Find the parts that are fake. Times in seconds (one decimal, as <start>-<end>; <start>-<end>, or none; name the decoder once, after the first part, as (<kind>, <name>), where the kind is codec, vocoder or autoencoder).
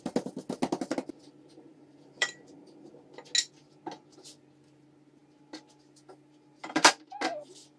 1.7-2.9 (vocoder, BigVGAN v2); 6.6-7.1